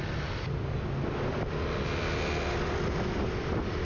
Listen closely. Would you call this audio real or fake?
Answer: real